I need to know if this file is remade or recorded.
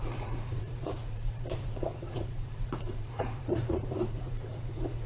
remade